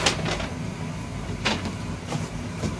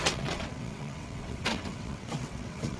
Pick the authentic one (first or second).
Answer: first